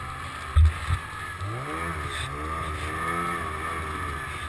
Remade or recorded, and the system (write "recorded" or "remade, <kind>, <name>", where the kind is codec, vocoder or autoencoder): recorded